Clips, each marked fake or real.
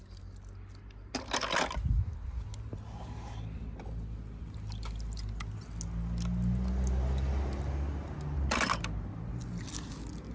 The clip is real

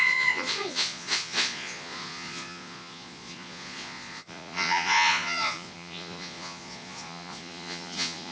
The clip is fake